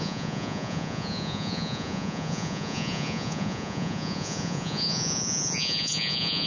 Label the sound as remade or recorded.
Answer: remade